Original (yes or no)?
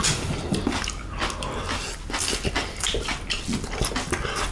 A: yes